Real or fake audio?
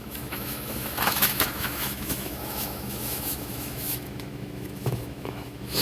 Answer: fake